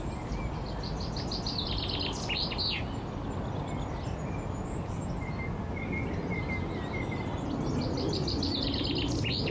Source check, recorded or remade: recorded